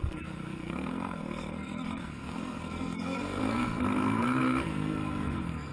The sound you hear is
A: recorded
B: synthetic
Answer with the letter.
B